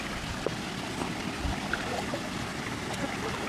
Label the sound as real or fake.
real